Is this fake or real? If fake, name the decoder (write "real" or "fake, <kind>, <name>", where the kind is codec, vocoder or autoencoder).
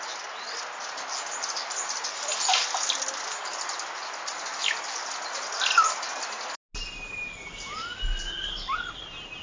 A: real